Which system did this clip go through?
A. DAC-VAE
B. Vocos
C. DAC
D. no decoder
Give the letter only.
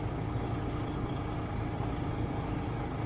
D